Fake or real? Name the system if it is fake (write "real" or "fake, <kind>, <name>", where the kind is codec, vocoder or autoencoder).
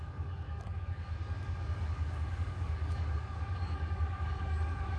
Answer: fake, codec, DAC